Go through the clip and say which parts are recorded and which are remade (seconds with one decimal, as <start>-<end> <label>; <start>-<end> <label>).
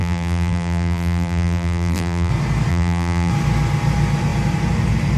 0.0-2.3 remade; 2.3-2.7 recorded; 2.7-3.3 remade; 3.3-5.2 recorded